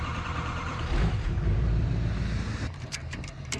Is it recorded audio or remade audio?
remade